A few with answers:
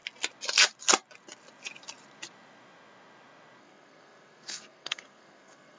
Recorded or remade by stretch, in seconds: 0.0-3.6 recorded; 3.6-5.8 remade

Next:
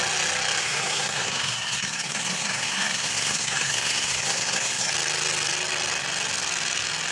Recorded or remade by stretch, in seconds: 0.0-0.6 recorded; 0.6-4.9 remade; 4.9-7.1 recorded

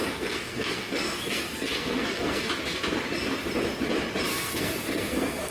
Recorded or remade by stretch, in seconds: 0.0-2.5 remade; 2.5-4.3 recorded; 4.3-5.5 remade

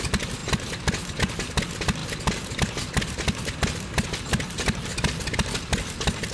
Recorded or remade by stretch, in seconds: 0.0-6.3 recorded